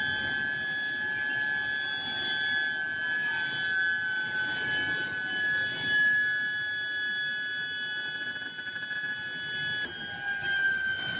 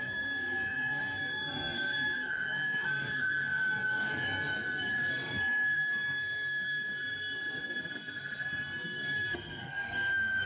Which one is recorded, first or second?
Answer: first